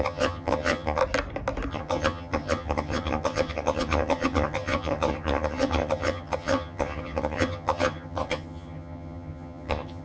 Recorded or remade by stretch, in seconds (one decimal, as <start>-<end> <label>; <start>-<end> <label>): 0.0-1.0 remade; 1.0-1.7 recorded; 1.7-10.0 remade